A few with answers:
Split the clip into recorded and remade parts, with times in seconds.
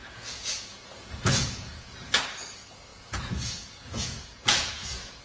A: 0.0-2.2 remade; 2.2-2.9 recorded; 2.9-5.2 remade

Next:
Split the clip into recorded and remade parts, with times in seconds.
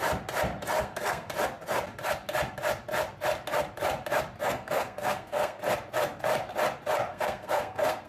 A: 0.0-0.8 recorded; 0.8-1.3 remade; 1.3-4.4 recorded; 4.4-5.6 remade; 5.6-7.1 recorded; 7.1-8.1 remade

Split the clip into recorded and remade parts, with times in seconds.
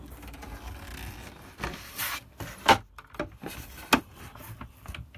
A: 0.0-5.2 recorded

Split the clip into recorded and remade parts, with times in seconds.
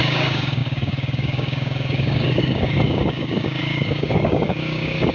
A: 0.0-5.1 remade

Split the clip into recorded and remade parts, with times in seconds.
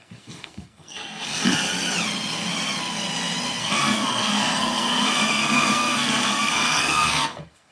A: 0.0-1.7 remade; 1.7-3.6 recorded; 3.6-7.7 remade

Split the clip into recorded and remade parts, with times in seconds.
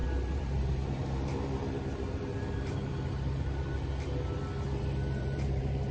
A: 0.0-3.1 remade; 3.1-5.2 recorded; 5.2-5.9 remade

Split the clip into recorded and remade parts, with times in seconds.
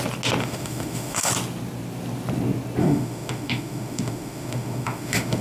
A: 0.0-0.4 recorded; 0.4-1.3 remade; 1.3-2.8 recorded; 2.8-5.4 remade